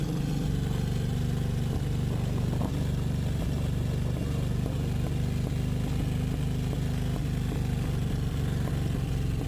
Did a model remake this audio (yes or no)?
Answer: no